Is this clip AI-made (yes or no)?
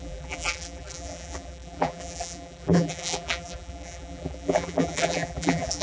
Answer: yes